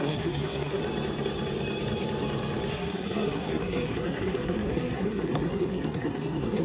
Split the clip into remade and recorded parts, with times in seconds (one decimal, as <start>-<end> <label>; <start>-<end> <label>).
0.0-0.8 remade; 0.8-2.7 recorded; 2.7-6.6 remade